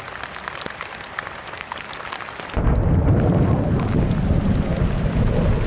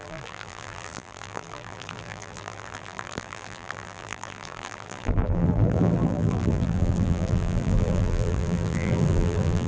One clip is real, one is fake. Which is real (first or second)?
first